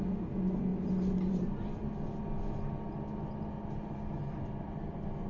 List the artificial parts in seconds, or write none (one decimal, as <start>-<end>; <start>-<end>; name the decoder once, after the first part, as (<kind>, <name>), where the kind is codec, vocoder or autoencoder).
none